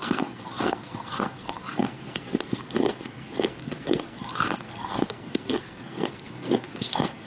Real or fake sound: fake